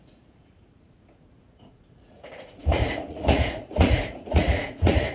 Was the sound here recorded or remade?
remade